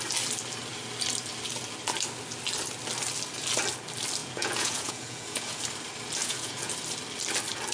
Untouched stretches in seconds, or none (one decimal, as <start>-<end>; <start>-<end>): 0.0-4.2; 5.6-6.2; 6.7-7.7